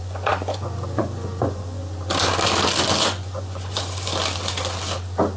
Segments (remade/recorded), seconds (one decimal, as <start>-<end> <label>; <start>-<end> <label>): 0.0-1.8 remade; 1.8-3.0 recorded; 3.0-4.1 remade; 4.1-5.4 recorded